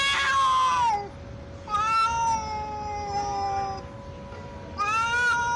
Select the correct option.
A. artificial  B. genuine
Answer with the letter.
B